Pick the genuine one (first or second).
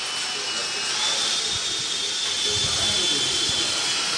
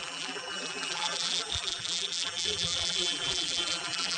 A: first